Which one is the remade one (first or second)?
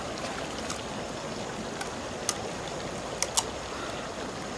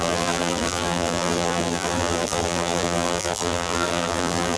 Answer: second